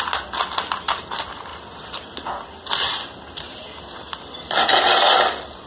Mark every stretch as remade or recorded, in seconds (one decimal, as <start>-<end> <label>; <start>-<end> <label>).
0.0-5.7 recorded